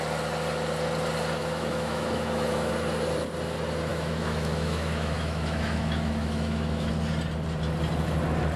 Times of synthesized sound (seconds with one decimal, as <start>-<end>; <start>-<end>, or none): 1.4-2.7; 3.9-6.9